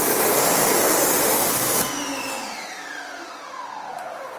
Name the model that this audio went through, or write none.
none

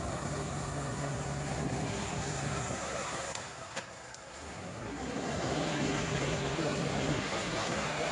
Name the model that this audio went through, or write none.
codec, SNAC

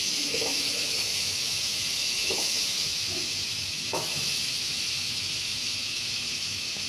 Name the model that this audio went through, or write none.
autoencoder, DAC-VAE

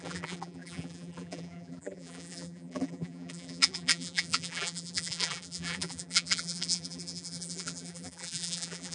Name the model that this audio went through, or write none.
vocoder, BigVGAN v2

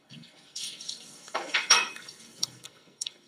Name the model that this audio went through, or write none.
codec, SNAC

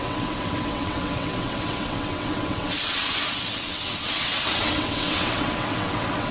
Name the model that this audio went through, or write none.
vocoder, WaveNeXt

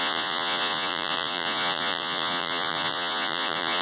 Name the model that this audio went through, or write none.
vocoder, Vocos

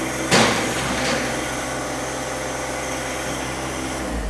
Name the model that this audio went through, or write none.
none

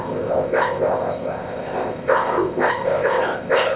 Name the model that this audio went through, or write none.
codec, ZipCodec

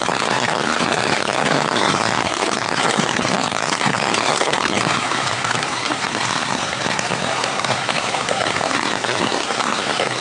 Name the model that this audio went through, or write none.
codec, SNAC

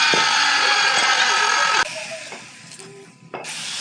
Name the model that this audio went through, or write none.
none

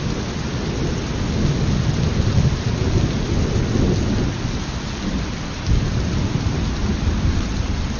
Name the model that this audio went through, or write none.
none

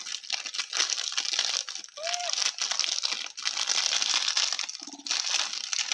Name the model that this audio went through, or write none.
none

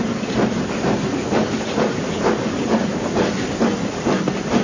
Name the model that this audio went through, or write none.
none